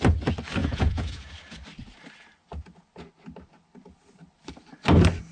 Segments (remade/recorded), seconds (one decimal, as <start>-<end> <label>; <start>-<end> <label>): 0.0-0.6 recorded; 0.6-1.3 remade; 1.3-5.3 recorded